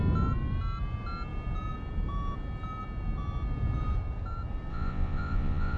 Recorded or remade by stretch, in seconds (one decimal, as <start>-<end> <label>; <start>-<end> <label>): 0.0-4.7 recorded; 4.7-5.8 remade